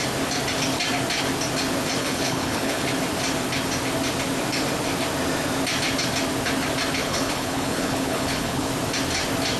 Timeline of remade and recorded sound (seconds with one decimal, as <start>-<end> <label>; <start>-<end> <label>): 0.0-2.0 recorded; 2.0-2.9 remade; 2.9-7.0 recorded; 7.0-8.7 remade; 8.7-9.6 recorded